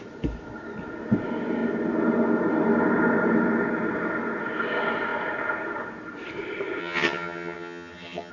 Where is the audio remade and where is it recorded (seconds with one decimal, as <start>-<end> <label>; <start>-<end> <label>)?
0.0-6.8 recorded; 6.8-8.3 remade